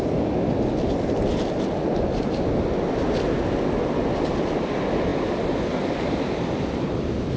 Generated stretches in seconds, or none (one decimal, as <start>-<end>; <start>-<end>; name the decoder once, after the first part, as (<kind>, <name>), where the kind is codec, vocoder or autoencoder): none